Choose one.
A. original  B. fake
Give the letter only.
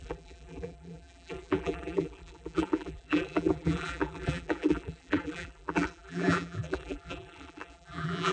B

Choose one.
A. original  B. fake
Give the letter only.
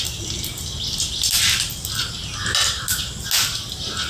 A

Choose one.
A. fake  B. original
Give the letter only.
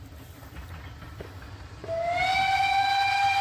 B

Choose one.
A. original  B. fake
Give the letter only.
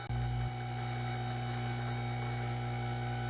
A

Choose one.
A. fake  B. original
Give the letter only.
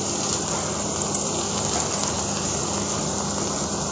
B